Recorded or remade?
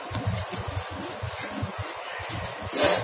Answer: recorded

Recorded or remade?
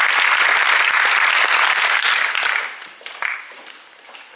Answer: recorded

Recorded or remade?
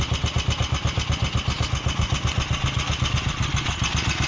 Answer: recorded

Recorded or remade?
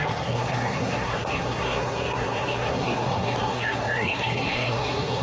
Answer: remade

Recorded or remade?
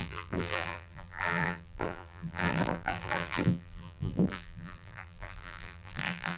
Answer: remade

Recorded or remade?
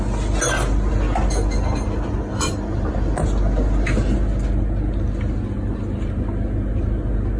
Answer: recorded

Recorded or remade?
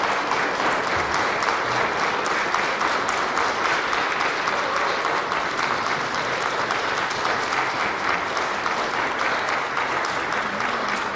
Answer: recorded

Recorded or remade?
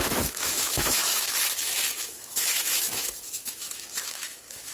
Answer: remade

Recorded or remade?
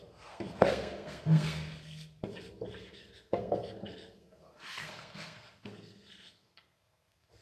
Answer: remade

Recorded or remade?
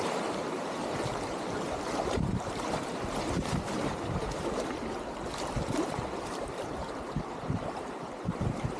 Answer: remade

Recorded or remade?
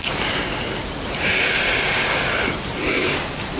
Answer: recorded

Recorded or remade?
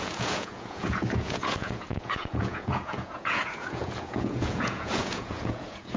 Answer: remade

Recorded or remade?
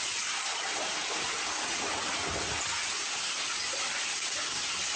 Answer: recorded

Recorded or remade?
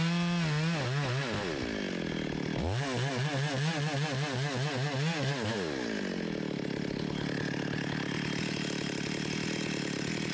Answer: recorded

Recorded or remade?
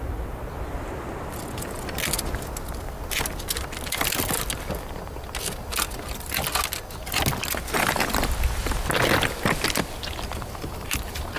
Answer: recorded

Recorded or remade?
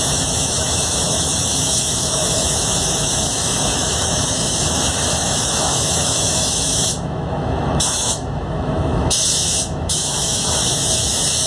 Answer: remade